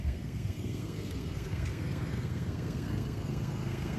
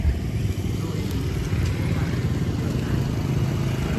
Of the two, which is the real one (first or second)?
second